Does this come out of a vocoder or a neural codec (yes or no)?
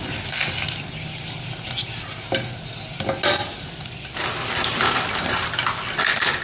no